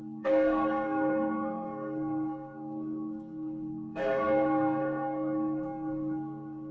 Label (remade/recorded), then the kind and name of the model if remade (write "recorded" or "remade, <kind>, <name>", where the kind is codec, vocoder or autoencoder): remade, codec, SNAC